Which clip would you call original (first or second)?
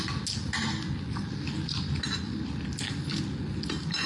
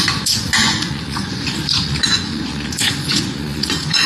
first